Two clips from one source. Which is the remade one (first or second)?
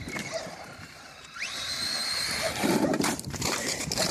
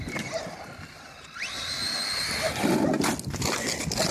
first